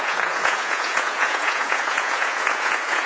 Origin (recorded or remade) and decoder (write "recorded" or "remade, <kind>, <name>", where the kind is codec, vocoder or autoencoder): remade, vocoder, Vocos